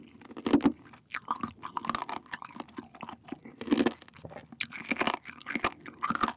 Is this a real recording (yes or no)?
yes